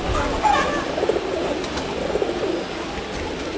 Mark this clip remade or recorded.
recorded